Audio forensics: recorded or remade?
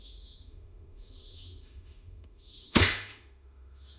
remade